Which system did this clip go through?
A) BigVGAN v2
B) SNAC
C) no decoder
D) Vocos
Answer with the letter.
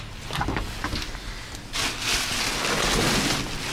C